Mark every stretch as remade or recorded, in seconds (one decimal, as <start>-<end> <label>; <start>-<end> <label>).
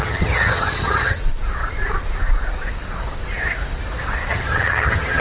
0.0-1.2 remade; 1.2-4.3 recorded; 4.3-5.2 remade